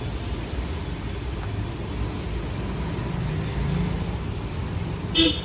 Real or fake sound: real